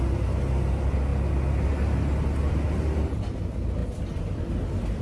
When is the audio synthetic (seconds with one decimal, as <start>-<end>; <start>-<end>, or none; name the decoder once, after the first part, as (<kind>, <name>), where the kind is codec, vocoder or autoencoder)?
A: none